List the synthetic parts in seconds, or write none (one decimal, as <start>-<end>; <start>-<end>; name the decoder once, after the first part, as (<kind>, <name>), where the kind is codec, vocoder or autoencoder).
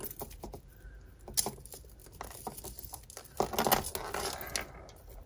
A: none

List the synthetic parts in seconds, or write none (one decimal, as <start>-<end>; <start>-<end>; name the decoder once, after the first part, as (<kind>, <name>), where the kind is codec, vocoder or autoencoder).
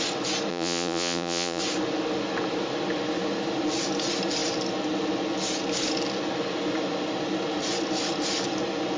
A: 0.5-1.6 (vocoder, Vocos)